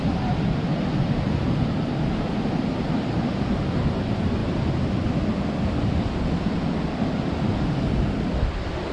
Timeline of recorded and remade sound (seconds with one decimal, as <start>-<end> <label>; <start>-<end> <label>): 0.0-8.9 recorded